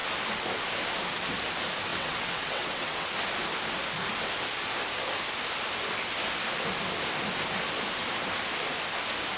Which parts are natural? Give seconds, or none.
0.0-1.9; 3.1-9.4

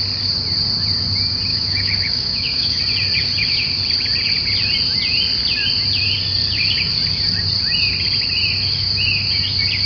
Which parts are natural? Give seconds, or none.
0.0-1.5; 2.8-9.9

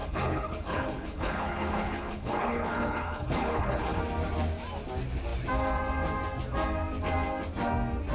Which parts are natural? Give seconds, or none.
4.0-8.1

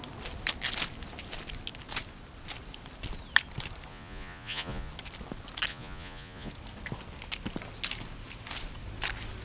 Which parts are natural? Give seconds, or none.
0.0-3.9; 4.9-5.7; 6.5-9.4

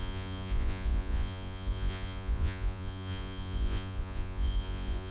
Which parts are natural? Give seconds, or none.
none

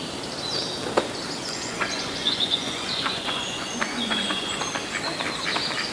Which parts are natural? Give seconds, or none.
0.0-1.4; 4.6-5.9

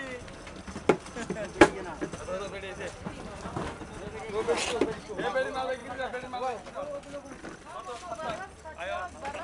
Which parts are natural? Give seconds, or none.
0.0-9.4

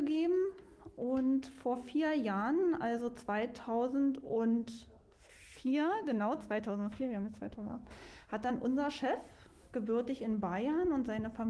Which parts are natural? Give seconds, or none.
0.0-4.6; 8.5-11.5